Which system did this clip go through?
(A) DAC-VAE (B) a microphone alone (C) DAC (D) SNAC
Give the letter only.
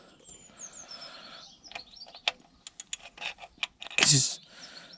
B